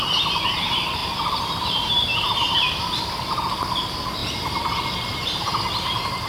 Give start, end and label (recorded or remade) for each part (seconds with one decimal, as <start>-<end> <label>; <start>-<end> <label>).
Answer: 0.0-1.0 recorded; 1.0-3.0 remade; 3.0-4.2 recorded; 4.2-5.6 remade; 5.6-6.3 recorded

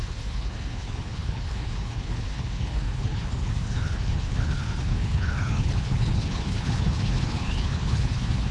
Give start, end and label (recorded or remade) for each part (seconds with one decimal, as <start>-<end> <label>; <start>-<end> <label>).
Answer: 0.0-8.5 remade

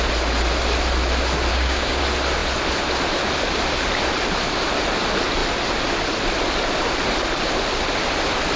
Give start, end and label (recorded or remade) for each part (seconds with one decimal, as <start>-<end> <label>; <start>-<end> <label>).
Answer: 0.0-1.5 recorded; 1.5-2.0 remade; 2.0-8.6 recorded

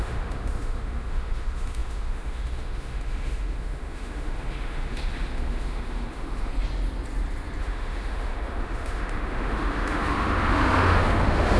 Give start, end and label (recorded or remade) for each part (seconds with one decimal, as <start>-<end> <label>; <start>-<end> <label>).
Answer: 0.0-6.5 remade; 6.5-7.6 recorded; 7.6-11.6 remade

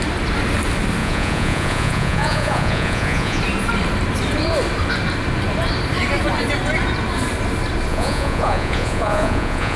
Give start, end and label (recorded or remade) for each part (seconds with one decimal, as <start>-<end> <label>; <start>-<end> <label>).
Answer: 0.0-1.0 recorded; 1.0-3.4 remade; 3.4-7.9 recorded; 7.9-9.8 remade

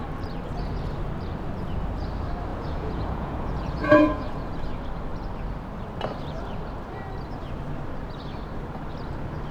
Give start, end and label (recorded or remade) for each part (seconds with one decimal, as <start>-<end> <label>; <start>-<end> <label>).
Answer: 0.0-2.5 recorded; 2.5-4.5 remade; 4.5-9.5 recorded